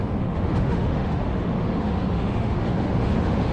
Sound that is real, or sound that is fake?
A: fake